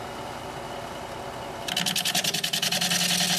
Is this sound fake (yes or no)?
no